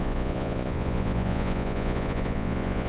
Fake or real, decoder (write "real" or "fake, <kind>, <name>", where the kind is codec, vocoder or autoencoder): fake, vocoder, Vocos